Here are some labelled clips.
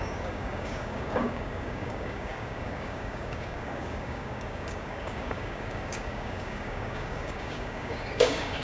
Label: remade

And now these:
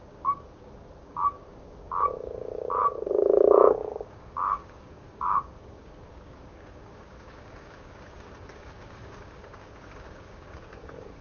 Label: remade